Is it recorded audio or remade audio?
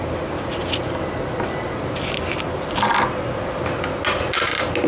recorded